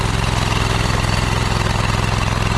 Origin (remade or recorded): recorded